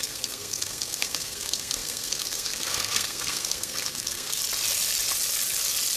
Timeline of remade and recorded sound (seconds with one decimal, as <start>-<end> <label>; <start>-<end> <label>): 0.0-4.4 remade; 4.4-6.0 recorded